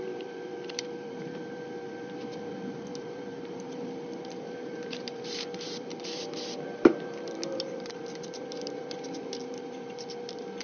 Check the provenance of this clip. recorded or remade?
remade